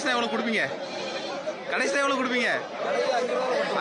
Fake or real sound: real